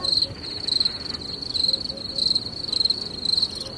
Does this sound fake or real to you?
real